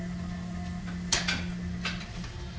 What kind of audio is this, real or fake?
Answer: real